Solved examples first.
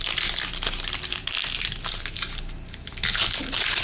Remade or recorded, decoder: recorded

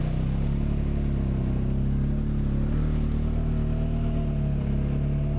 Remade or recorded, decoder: recorded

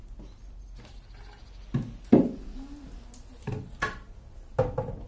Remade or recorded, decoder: recorded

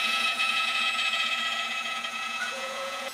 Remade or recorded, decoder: remade, vocoder, Vocos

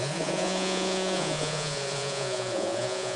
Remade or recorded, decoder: remade, vocoder, Vocos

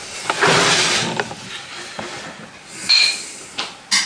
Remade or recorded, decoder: recorded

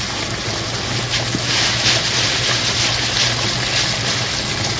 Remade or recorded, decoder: recorded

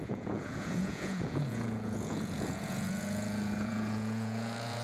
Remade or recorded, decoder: remade, vocoder, Vocos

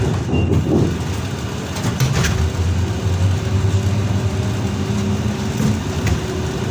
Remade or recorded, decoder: recorded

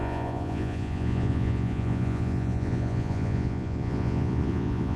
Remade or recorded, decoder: remade, vocoder, Vocos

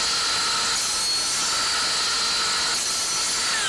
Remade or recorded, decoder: recorded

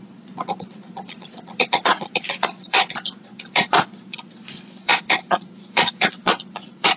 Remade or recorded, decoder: remade, vocoder, Vocos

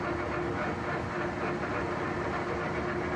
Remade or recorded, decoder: recorded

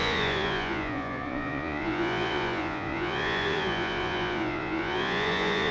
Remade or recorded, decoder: remade, vocoder, Vocos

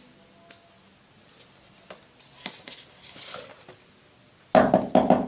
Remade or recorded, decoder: recorded